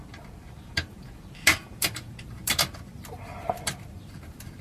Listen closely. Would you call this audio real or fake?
fake